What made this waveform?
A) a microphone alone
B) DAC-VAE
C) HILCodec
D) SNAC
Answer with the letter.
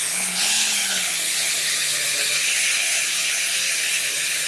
C